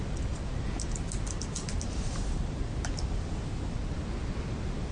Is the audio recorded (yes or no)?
yes